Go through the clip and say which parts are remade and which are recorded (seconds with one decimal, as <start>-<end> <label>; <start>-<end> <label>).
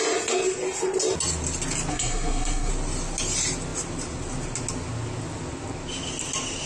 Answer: 0.0-1.9 recorded; 1.9-2.7 remade; 2.7-6.7 recorded